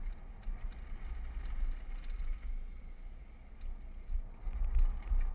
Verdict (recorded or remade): recorded